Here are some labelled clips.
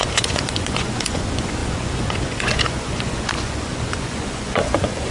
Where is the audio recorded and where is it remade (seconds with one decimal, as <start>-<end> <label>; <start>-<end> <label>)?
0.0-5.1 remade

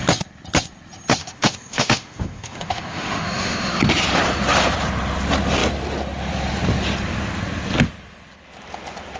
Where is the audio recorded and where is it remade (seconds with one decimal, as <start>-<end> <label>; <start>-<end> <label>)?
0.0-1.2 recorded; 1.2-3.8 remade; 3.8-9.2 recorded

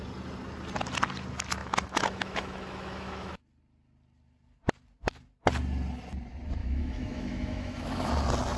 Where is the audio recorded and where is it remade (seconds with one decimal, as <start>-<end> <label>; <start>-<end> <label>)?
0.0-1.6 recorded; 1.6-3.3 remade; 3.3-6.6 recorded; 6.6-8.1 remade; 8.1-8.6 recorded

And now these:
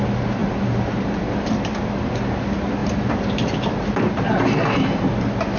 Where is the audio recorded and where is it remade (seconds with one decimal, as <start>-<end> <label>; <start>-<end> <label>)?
0.0-0.4 recorded; 0.4-1.2 remade; 1.2-2.8 recorded; 2.8-3.9 remade; 3.9-5.6 recorded

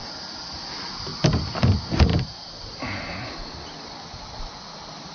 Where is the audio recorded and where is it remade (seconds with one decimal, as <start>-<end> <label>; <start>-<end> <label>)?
0.0-5.1 recorded

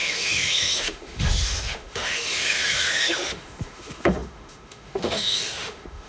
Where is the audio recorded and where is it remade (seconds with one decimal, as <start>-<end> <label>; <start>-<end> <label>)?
0.0-6.1 remade

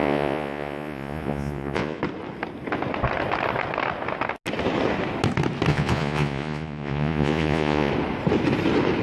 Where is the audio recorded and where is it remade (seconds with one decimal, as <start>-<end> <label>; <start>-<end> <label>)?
0.0-2.0 remade; 2.0-5.7 recorded; 5.7-7.9 remade; 7.9-9.0 recorded

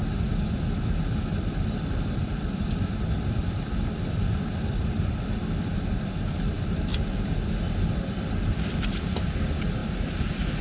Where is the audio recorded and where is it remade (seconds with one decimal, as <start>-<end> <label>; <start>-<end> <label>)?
0.0-10.6 recorded